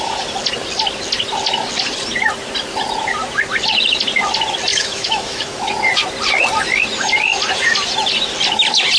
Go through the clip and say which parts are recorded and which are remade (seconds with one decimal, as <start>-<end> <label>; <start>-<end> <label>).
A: 0.0-4.7 recorded; 4.7-5.7 remade; 5.7-9.0 recorded